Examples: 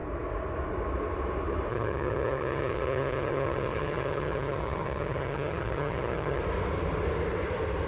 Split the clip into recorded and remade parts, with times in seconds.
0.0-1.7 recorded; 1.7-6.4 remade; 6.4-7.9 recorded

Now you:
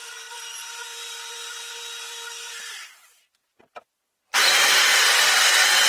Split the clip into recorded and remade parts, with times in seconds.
0.0-5.9 recorded

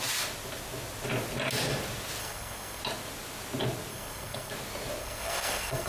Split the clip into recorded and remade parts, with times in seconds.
0.0-2.2 recorded; 2.2-2.8 remade; 2.8-3.9 recorded; 3.9-4.5 remade; 4.5-5.0 recorded; 5.0-5.9 remade

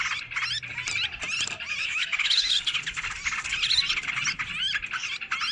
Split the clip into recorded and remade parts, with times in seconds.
0.0-1.8 recorded; 1.8-2.6 remade; 2.6-5.5 recorded

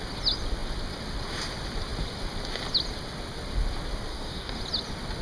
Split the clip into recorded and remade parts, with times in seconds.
0.0-4.1 recorded; 4.1-4.6 remade; 4.6-5.2 recorded

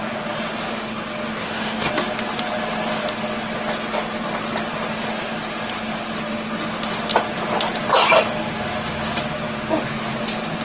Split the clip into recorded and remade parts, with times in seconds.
0.0-1.4 recorded; 1.4-1.9 remade; 1.9-10.6 recorded

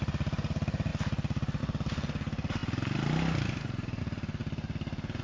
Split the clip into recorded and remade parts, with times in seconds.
0.0-5.2 recorded

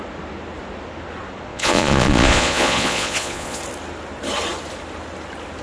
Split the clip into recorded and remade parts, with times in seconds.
0.0-1.5 recorded; 1.5-3.6 remade; 3.6-5.6 recorded